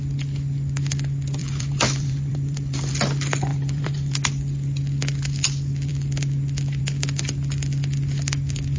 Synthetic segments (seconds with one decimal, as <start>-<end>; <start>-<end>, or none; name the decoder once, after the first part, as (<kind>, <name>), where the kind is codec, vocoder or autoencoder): 1.4-2.9 (vocoder, BigVGAN v2); 3.5-4.1